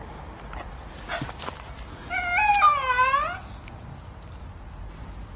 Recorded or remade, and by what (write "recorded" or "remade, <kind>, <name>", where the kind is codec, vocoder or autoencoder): recorded